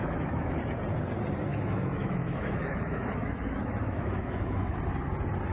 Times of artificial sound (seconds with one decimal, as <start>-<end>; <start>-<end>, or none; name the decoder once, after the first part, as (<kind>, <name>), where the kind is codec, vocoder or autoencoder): 0.0-0.6 (autoencoder, DAC-VAE); 1.5-4.8

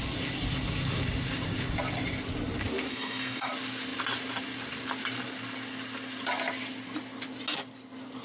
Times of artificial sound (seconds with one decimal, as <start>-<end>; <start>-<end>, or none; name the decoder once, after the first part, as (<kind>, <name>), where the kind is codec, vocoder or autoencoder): 2.9-3.5 (codec, SNAC)

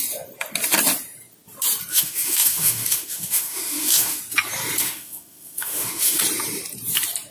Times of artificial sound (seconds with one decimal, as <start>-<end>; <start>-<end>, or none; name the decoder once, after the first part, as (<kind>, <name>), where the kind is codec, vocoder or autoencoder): 1.9-4.2 (autoencoder, DAC-VAE); 4.8-6.2

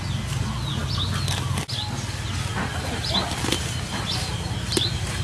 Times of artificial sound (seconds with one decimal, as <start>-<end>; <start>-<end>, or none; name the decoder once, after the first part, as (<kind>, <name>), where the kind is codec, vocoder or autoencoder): none